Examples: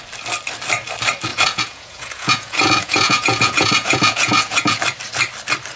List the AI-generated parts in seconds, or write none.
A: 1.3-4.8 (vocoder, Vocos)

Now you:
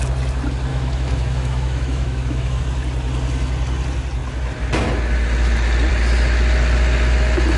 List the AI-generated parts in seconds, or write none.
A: 0.7-2.6 (autoencoder, DAC-VAE)

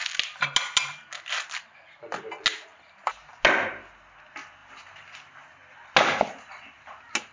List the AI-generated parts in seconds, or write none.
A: 2.7-3.3 (vocoder, BigVGAN v2)